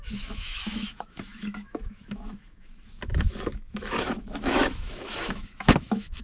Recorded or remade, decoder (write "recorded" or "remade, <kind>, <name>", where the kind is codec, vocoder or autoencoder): remade, autoencoder, DAC-VAE